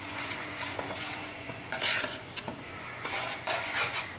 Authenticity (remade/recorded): remade